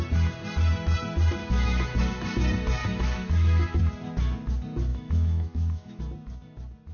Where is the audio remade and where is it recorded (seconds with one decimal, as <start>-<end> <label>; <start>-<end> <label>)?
0.0-1.4 recorded; 1.4-2.0 remade; 2.0-2.8 recorded; 2.8-3.8 remade; 3.8-4.9 recorded; 4.9-6.0 remade; 6.0-6.9 recorded